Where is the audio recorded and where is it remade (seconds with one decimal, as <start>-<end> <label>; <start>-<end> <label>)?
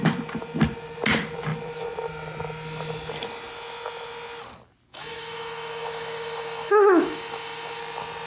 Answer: 0.0-4.9 recorded; 4.9-7.8 remade; 7.8-8.3 recorded